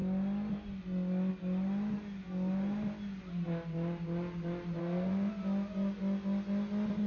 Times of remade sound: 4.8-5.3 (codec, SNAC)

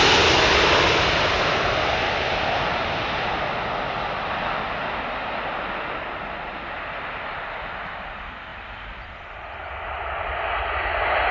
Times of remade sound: none

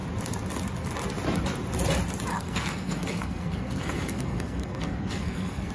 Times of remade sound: 2.3-5.7 (codec, SNAC)

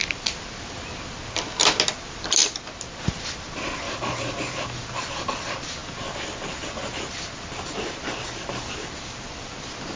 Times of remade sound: none

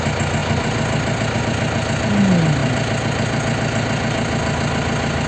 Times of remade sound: none

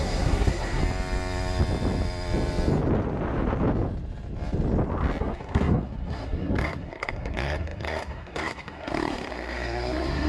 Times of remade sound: 0.0-0.8 (codec, SNAC); 5.2-10.3

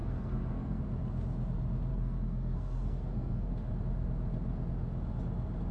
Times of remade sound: 0.0-0.8 (codec, SNAC); 1.9-3.7

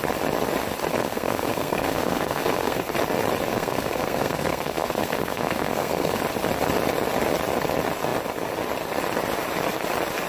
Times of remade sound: 1.0-2.8 (codec, SNAC); 3.5-6.2